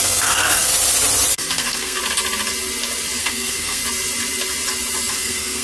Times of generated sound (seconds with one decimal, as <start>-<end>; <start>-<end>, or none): 0.0-0.7; 1.3-2.0; 3.2-3.8; 5.1-5.6